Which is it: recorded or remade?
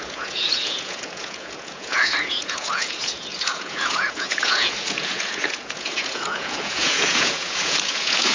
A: remade